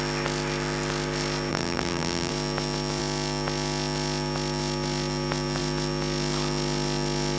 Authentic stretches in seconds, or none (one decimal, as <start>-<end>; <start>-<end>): 0.0-1.5; 2.3-7.4